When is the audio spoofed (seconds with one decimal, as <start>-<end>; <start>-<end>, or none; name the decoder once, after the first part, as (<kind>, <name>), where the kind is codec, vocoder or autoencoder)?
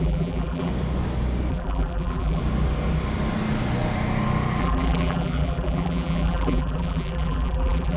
0.0-0.7 (vocoder, BigVGAN v2); 1.5-2.4; 4.6-8.0